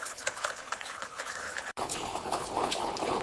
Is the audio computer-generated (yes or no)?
yes